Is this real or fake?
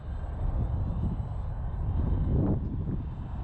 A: real